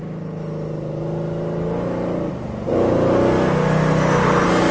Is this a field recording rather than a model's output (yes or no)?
yes